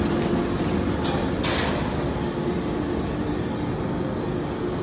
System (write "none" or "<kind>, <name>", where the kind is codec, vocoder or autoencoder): none